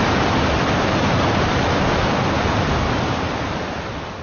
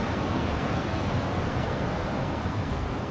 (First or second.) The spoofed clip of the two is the second